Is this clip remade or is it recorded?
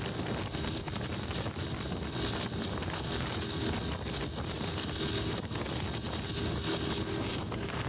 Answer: recorded